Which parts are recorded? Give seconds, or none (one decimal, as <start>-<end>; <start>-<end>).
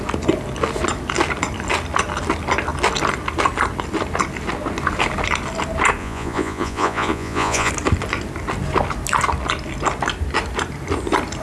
0.0-6.0; 7.7-11.4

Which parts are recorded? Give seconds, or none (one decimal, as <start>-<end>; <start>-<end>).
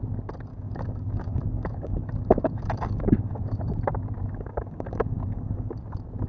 0.0-0.5; 3.4-4.2; 5.7-6.3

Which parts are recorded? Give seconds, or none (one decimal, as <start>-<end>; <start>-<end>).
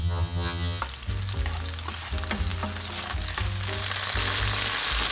0.8-5.1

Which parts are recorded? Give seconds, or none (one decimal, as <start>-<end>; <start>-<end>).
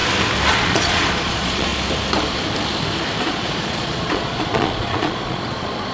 0.0-0.5; 1.7-3.2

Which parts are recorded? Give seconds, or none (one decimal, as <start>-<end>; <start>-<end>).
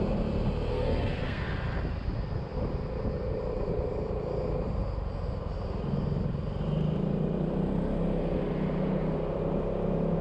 0.0-0.7; 1.4-10.2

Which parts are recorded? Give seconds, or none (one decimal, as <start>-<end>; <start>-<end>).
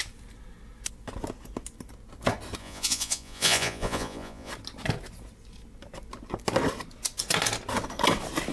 0.0-2.6; 4.5-8.5